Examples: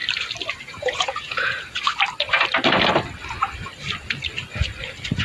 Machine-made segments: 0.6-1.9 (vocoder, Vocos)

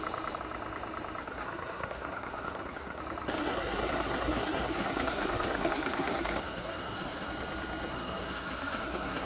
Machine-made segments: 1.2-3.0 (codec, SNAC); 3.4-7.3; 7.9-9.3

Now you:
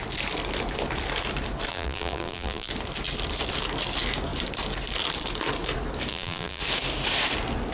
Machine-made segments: 1.7-2.7 (vocoder, BigVGAN v2); 6.1-6.6

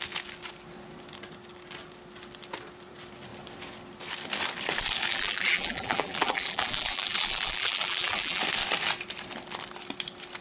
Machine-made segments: 5.1-8.4 (vocoder, BigVGAN v2)